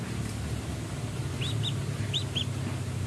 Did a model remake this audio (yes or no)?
no